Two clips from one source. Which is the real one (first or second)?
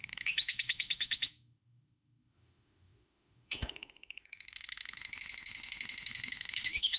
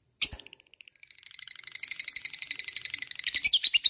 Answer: second